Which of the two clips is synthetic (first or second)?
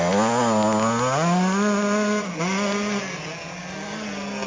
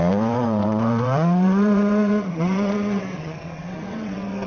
second